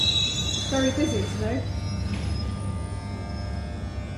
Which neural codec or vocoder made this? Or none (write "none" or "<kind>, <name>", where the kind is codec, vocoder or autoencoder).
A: none